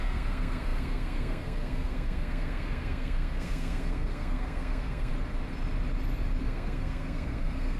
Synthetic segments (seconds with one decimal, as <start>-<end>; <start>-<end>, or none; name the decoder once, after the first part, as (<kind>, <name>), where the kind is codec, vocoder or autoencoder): 0.0-5.1 (codec, SNAC); 6.4-7.8